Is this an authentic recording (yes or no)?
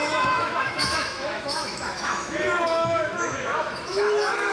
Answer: no